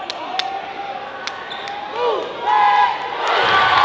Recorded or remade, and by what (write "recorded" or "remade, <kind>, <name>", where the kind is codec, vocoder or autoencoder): recorded